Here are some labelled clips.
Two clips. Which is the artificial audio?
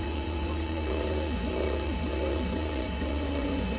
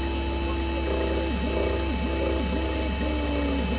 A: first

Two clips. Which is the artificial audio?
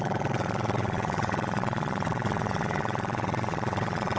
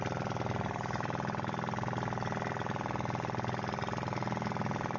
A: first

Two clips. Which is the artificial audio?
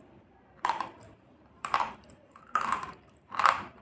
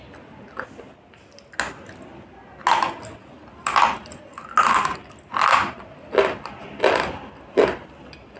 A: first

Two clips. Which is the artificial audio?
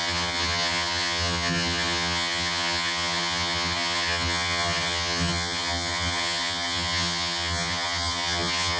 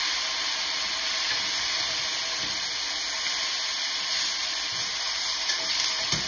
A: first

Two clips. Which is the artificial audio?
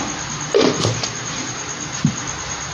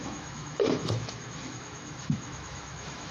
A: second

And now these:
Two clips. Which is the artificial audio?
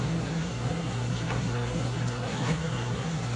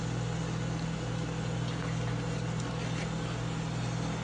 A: first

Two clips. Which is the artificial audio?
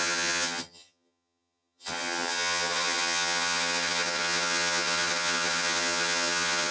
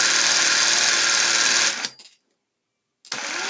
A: first